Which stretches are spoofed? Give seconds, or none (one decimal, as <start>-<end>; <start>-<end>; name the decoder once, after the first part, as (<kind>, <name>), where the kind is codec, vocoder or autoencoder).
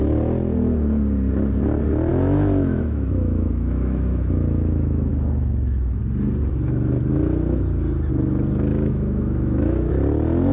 2.1-5.1 (autoencoder, DAC-VAE); 8.7-9.9